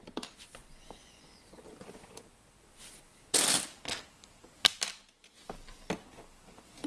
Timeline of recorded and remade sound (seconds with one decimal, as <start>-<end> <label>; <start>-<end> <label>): 0.0-0.6 recorded; 0.6-1.6 remade; 1.6-6.9 recorded